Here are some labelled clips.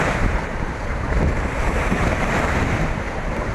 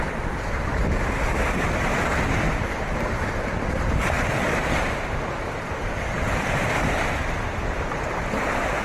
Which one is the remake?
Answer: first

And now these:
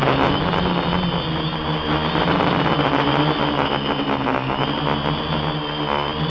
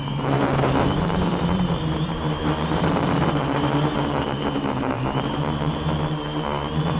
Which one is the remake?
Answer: second